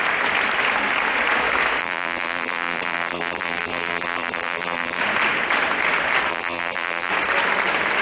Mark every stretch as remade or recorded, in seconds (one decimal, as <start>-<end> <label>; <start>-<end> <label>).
0.0-1.8 recorded; 1.8-5.0 remade; 5.0-6.3 recorded; 6.3-7.1 remade; 7.1-8.0 recorded